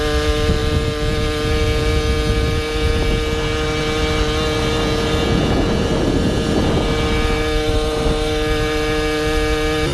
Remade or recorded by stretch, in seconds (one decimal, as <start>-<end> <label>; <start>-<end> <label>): 0.0-9.9 recorded